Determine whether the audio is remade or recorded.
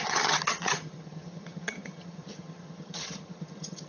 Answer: remade